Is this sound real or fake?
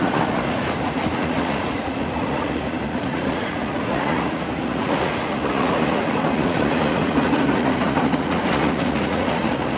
fake